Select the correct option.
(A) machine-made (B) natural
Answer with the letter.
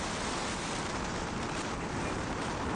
A